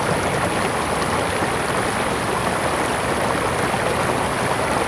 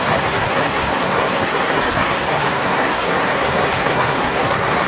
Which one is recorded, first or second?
first